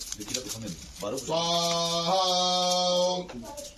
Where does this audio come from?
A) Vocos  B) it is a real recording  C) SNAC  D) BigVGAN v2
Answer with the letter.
B